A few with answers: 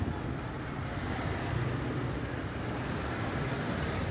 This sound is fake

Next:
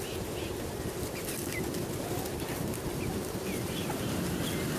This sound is real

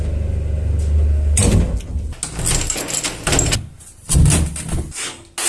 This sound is real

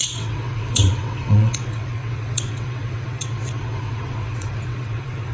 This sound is fake